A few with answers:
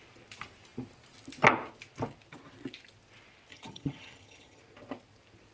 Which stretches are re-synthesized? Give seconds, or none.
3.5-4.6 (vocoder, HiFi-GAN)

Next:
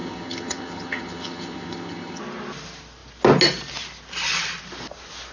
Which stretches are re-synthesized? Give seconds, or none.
0.0-2.2 (vocoder, HiFi-GAN)

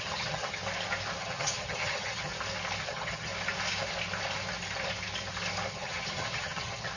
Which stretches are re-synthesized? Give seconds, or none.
0.0-0.6 (vocoder, HiFi-GAN); 1.2-2.3; 2.8-3.3; 5.7-7.0